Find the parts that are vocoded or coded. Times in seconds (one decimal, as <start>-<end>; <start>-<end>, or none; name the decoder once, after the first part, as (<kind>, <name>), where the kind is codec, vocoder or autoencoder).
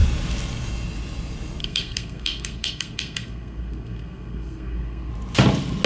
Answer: 1.6-5.1 (codec, SNAC)